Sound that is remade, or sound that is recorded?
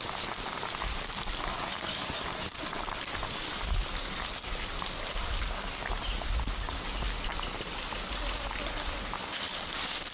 recorded